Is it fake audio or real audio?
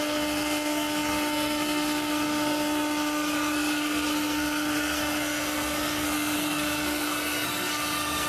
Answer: fake